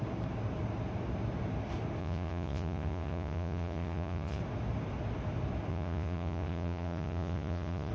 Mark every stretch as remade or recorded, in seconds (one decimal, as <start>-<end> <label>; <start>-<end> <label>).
0.0-2.0 recorded; 2.0-4.4 remade; 4.4-5.7 recorded; 5.7-7.9 remade